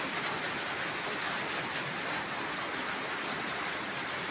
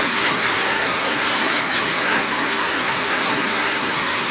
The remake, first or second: second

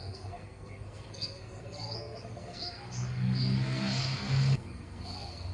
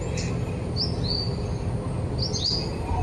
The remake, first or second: first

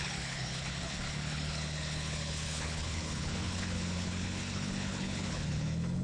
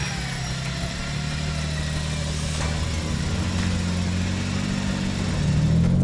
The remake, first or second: first